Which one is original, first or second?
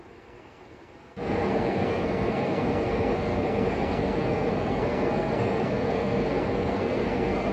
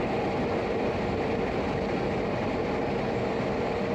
second